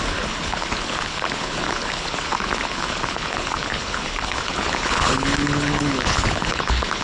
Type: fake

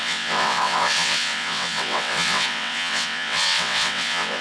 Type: fake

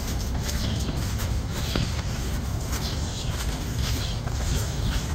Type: fake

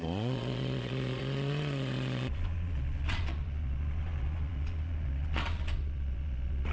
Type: fake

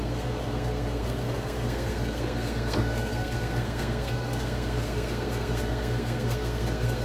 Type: fake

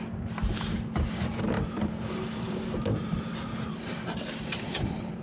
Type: fake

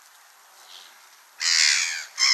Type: real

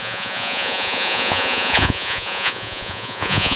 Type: fake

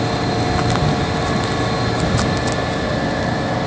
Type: real